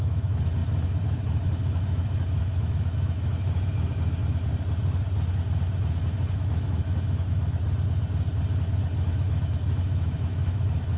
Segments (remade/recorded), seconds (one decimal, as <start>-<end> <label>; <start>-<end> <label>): 0.0-4.5 remade; 4.5-6.3 recorded; 6.3-7.6 remade; 7.6-9.0 recorded; 9.0-11.0 remade